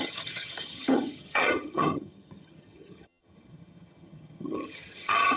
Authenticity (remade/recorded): remade